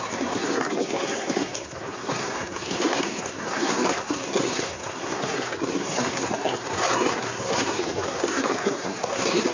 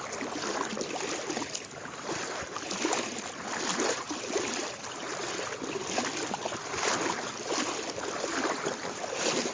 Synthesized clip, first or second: first